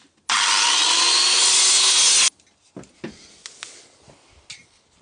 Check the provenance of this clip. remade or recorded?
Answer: recorded